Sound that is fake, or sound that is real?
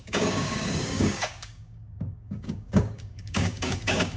fake